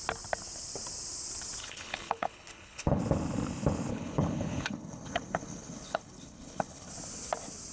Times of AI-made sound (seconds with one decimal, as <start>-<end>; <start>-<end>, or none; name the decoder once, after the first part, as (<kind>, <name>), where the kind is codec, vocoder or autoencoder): 1.6-3.0 (codec, HILCodec); 3.9-6.9